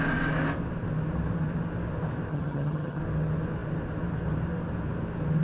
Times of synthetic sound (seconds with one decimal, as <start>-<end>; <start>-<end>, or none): 2.3-3.0

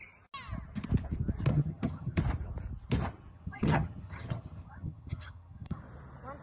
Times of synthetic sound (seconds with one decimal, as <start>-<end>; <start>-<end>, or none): 1.5-2.2; 3.3-5.8

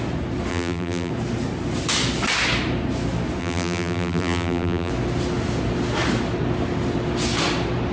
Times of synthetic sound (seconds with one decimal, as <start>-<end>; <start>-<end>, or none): 0.5-1.1; 3.4-4.9